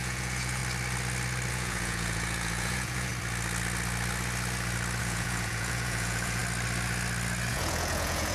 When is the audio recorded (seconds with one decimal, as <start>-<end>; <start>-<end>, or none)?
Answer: 0.6-1.5; 3.1-5.0; 6.4-7.5